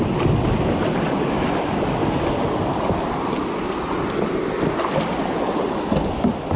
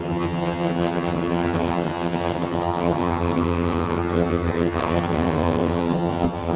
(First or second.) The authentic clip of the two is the first